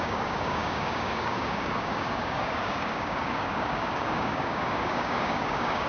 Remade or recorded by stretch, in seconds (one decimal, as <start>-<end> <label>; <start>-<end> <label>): 0.0-5.9 remade